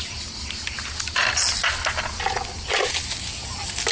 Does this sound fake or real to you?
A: real